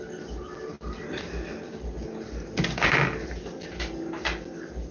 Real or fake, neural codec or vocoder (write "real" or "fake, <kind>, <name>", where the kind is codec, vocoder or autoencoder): real